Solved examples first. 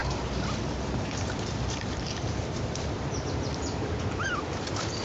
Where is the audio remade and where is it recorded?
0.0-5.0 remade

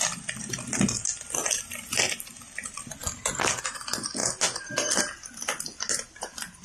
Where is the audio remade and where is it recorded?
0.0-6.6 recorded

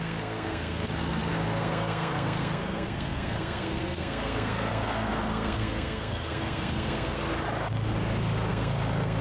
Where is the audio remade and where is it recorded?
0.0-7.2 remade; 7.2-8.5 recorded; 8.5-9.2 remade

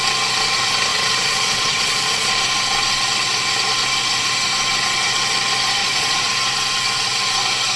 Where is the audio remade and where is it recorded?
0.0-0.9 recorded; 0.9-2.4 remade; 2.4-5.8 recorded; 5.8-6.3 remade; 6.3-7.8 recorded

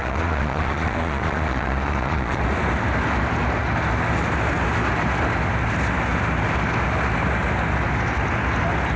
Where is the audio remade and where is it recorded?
0.0-2.4 remade; 2.4-9.0 recorded